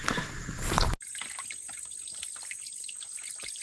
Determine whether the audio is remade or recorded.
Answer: recorded